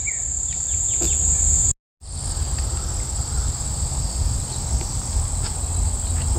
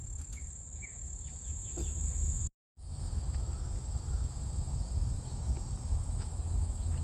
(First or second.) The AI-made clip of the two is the second